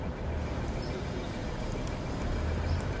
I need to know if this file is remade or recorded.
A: recorded